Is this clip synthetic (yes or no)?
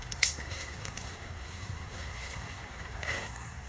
yes